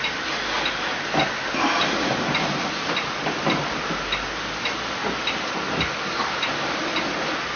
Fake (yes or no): no